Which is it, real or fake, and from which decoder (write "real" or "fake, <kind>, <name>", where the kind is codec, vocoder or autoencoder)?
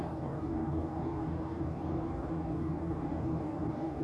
fake, codec, DAC